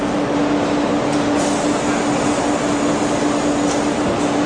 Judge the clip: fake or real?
real